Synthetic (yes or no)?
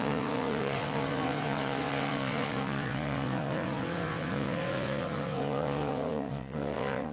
yes